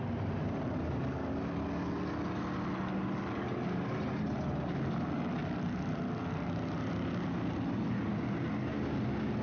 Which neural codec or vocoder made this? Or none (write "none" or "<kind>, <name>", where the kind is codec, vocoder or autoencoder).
none